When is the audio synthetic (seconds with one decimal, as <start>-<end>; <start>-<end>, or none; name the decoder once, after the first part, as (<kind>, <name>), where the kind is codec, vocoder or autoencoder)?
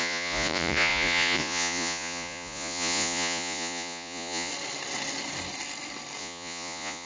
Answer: 0.0-4.5 (vocoder, Vocos); 6.2-7.1